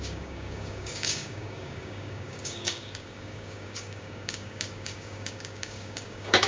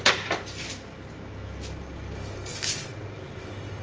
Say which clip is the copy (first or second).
first